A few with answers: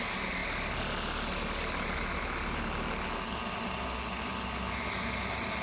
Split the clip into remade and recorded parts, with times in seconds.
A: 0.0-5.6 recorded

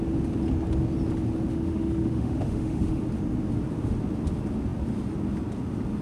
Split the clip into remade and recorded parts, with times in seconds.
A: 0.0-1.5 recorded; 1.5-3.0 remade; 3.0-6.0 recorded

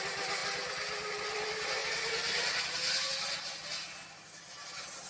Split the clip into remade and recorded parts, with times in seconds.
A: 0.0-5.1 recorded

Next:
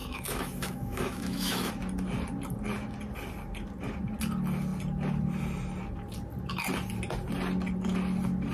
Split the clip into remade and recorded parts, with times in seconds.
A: 0.0-1.7 remade; 1.7-8.5 recorded

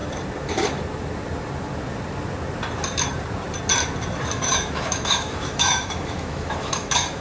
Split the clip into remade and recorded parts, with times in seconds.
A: 0.0-4.3 recorded; 4.3-7.2 remade

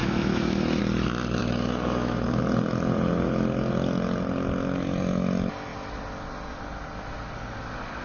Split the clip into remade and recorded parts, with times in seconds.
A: 0.0-0.8 remade; 0.8-1.4 recorded; 1.4-2.4 remade; 2.4-8.0 recorded

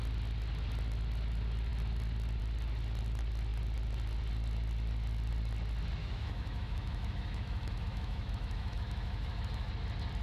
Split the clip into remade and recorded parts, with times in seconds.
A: 0.0-6.0 recorded; 6.0-9.7 remade; 9.7-10.2 recorded